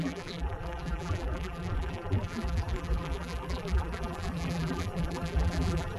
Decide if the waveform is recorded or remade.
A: remade